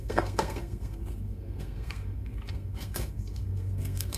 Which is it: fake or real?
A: fake